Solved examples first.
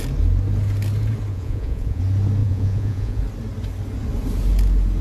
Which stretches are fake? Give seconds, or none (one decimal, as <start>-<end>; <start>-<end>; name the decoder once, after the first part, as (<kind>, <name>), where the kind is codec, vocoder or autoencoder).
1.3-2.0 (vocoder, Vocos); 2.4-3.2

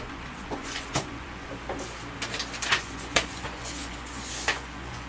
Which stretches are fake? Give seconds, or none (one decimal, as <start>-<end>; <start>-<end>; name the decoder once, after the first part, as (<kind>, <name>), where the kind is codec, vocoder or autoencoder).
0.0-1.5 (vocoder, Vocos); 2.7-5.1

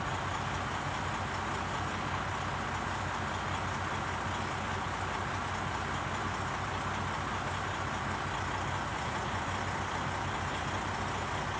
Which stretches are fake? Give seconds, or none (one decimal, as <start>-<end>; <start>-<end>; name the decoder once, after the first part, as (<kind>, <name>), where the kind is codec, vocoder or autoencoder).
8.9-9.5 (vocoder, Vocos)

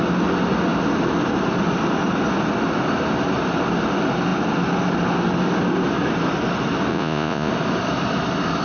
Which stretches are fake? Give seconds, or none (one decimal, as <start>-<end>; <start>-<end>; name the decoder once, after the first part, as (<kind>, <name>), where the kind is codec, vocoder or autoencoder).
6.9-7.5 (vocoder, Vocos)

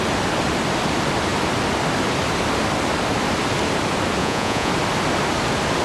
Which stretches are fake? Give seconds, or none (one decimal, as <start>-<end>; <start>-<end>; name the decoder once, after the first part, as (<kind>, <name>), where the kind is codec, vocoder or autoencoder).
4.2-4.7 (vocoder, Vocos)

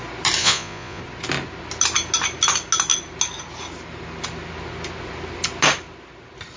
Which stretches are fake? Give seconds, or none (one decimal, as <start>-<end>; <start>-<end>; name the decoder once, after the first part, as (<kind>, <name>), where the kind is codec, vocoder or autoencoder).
0.4-1.0 (vocoder, Vocos)

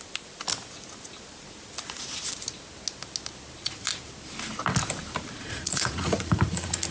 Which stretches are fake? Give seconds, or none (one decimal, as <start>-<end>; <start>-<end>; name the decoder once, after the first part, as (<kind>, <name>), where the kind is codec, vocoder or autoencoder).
5.4-6.9 (vocoder, Vocos)

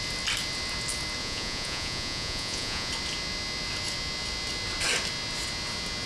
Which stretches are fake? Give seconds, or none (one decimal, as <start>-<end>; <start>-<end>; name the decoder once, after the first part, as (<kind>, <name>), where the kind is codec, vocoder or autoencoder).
1.2-2.9 (vocoder, Vocos)